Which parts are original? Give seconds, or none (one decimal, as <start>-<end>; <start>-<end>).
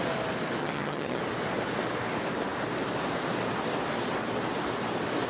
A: 0.0-0.6; 1.2-5.3